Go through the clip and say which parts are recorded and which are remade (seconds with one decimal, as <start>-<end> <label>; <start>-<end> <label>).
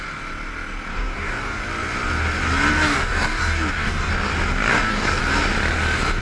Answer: 0.0-0.9 recorded; 0.9-1.6 remade; 1.6-2.7 recorded; 2.7-4.1 remade; 4.1-4.7 recorded; 4.7-5.2 remade; 5.2-6.2 recorded